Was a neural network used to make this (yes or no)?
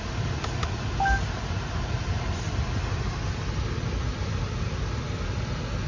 no